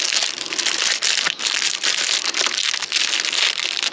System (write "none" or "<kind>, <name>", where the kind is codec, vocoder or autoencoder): none